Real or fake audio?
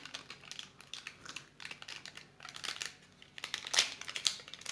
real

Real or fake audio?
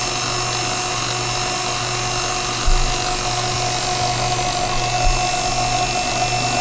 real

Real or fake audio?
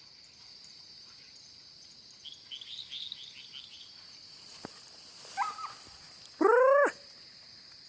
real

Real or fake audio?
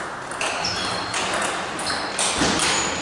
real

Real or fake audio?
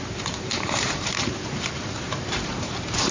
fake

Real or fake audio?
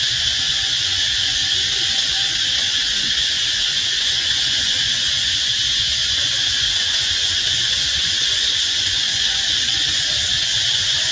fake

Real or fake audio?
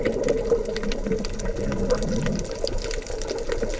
real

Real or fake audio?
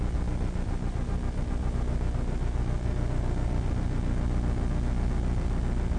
real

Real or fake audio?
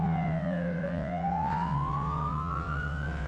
fake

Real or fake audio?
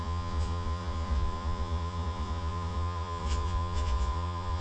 fake